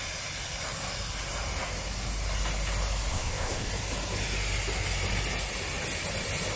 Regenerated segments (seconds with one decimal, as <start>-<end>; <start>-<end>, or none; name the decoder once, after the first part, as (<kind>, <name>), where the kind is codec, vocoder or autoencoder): 3.1-3.7 (codec, ZipCodec)